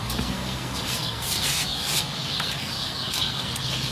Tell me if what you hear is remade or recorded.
remade